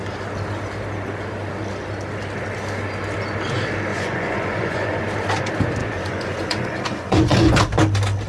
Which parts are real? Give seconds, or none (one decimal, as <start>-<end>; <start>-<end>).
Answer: 0.0-3.9; 5.0-5.8; 7.6-8.3